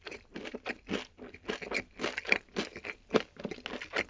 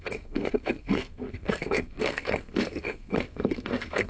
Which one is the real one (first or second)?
first